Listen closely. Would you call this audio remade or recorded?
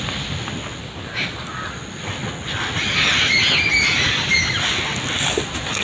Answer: recorded